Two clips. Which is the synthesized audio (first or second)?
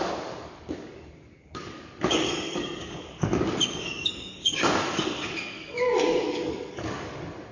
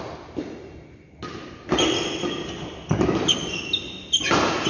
first